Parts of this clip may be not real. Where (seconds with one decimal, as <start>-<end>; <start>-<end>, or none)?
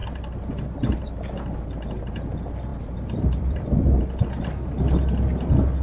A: 2.7-4.0